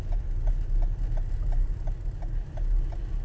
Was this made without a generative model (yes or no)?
yes